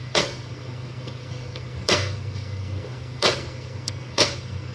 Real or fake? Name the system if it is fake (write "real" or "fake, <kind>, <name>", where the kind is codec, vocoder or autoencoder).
fake, codec, SNAC